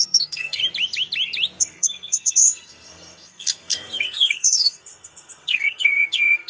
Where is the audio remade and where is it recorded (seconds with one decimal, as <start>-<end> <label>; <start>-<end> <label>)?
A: 0.0-0.6 remade; 0.6-1.6 recorded; 1.6-6.5 remade

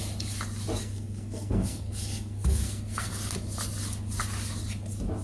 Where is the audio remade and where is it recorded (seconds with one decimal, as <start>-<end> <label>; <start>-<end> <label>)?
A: 0.0-0.8 recorded; 0.8-3.1 remade; 3.1-5.2 recorded

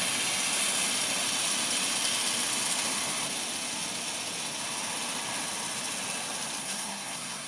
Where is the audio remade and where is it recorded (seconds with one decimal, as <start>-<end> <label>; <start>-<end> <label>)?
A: 0.0-6.6 recorded; 6.6-7.5 remade

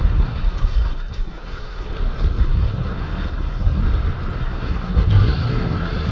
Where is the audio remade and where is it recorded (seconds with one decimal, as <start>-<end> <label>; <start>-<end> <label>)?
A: 0.0-1.9 remade; 1.9-2.4 recorded; 2.4-3.8 remade; 3.8-4.4 recorded; 4.4-6.1 remade